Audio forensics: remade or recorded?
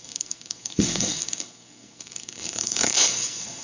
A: remade